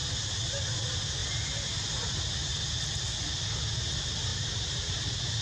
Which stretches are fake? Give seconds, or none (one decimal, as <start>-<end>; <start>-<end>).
4.3-5.0